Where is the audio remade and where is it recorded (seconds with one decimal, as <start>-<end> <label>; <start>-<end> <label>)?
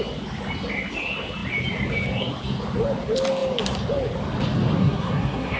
0.0-4.8 recorded; 4.8-5.6 remade